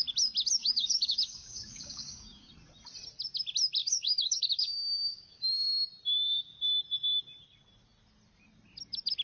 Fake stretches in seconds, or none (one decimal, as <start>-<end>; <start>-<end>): 0.6-2.5; 3.8-5.4